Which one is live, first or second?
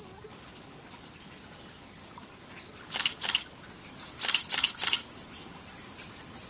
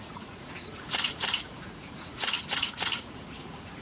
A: first